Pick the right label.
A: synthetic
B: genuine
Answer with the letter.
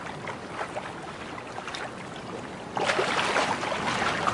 B